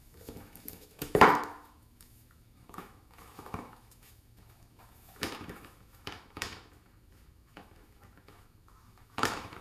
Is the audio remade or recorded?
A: remade